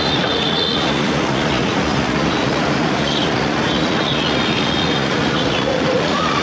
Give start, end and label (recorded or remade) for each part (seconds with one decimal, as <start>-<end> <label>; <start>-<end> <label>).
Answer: 0.0-6.4 remade